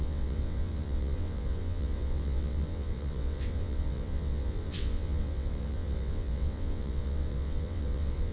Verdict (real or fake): fake